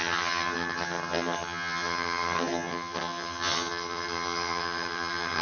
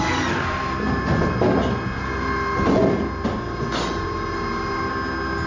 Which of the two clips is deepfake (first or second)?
first